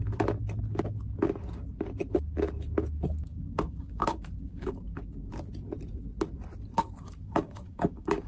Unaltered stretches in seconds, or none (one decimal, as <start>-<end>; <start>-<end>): 0.0-3.3; 5.3-6.7